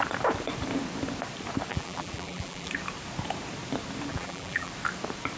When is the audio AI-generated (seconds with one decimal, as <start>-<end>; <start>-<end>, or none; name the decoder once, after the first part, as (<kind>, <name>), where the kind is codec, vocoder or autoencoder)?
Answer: 1.7-2.7 (vocoder, BigVGAN v2); 4.1-4.7